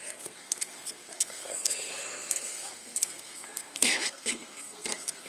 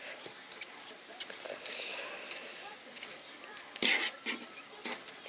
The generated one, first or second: first